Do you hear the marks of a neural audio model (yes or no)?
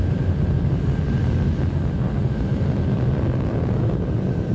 no